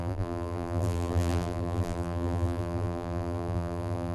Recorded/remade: remade